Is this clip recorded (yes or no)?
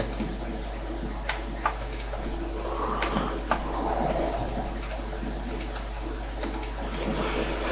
yes